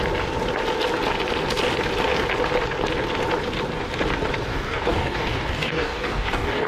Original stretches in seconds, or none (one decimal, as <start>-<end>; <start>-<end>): 0.0-4.5